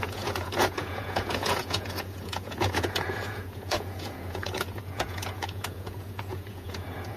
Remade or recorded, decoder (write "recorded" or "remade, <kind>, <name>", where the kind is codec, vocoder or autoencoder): remade, vocoder, Vocos